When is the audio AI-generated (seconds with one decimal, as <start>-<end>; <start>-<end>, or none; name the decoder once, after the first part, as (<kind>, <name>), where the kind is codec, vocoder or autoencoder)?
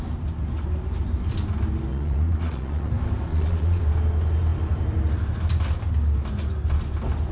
1.9-2.9 (vocoder, Vocos); 3.3-3.8